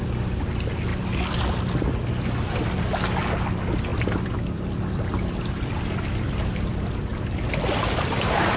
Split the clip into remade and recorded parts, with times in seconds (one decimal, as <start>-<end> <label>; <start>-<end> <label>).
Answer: 0.0-3.9 recorded; 3.9-5.7 remade; 5.7-7.1 recorded; 7.1-8.6 remade